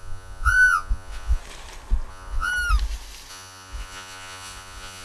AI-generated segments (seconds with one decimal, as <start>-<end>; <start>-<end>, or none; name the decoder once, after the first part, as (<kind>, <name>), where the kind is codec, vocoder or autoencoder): 0.0-1.4 (vocoder, Vocos); 2.1-2.5; 3.3-5.0